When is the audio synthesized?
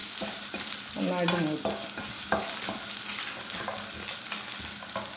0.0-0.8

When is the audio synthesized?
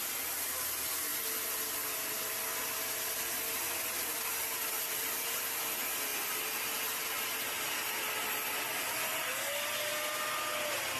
none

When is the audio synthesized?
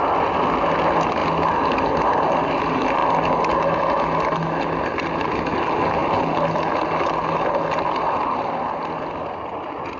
none